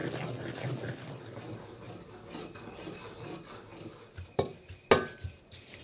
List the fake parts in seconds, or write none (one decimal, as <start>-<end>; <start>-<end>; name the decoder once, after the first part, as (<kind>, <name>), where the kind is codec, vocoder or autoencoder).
none